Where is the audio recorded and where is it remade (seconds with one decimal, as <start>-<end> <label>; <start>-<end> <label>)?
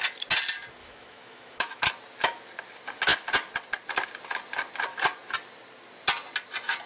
0.0-0.8 recorded; 0.8-1.9 remade; 1.9-6.9 recorded